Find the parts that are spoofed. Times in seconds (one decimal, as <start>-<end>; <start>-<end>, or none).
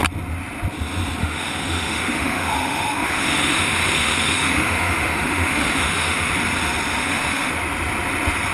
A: 1.2-6.3; 6.9-7.5